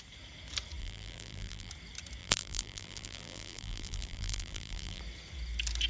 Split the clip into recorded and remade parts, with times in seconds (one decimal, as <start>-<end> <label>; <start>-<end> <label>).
0.0-0.8 recorded; 0.8-1.7 remade; 1.7-2.2 recorded; 2.2-5.0 remade; 5.0-5.9 recorded